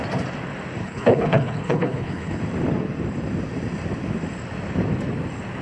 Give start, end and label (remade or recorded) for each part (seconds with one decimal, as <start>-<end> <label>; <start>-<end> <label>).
0.0-0.8 recorded; 0.8-2.4 remade; 2.4-5.6 recorded